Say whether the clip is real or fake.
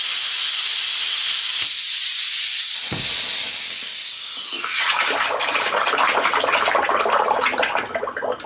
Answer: real